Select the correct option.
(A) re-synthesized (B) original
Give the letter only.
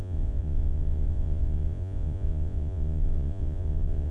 A